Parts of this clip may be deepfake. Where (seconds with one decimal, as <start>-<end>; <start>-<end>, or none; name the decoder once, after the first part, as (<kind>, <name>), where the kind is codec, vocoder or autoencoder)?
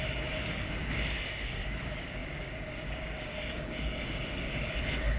0.0-5.2 (codec, DAC)